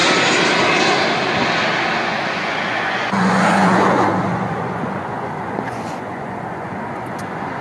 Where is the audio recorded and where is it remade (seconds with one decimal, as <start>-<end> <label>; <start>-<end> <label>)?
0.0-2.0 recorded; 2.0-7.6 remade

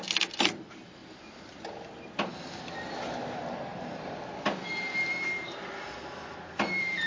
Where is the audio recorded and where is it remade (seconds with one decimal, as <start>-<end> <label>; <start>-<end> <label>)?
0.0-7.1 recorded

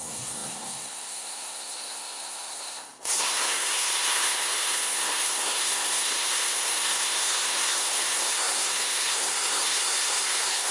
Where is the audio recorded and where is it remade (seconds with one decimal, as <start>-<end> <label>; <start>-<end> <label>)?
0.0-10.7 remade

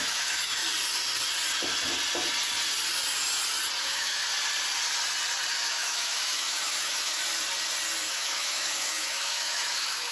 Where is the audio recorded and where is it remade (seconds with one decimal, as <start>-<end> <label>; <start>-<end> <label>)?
0.0-0.6 remade; 0.6-3.8 recorded; 3.8-4.2 remade; 4.2-5.5 recorded; 5.5-7.2 remade; 7.2-8.1 recorded; 8.1-10.1 remade

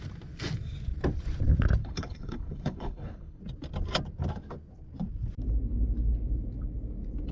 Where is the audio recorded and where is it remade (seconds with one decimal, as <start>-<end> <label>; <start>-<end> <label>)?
0.0-1.8 recorded; 1.8-3.4 remade; 3.4-7.3 recorded

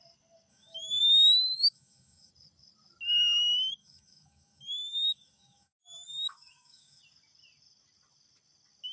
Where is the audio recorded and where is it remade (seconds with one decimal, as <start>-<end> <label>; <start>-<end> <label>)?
0.0-0.5 recorded; 0.5-1.0 remade; 1.0-1.5 recorded; 1.5-2.3 remade; 2.3-3.8 recorded; 3.8-7.0 remade; 7.0-8.9 recorded